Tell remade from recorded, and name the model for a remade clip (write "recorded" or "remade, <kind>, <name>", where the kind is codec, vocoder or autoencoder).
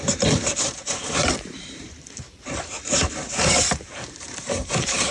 remade, vocoder, BigVGAN v2